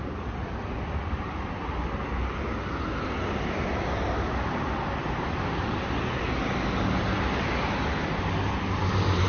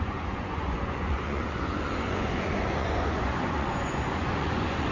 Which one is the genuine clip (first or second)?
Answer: first